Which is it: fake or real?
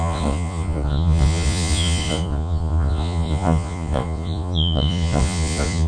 fake